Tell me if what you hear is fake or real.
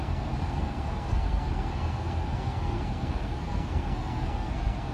fake